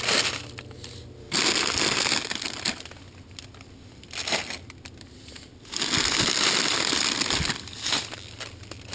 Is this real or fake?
real